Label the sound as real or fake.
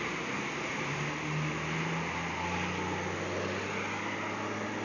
real